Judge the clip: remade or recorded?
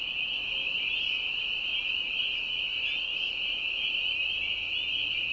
recorded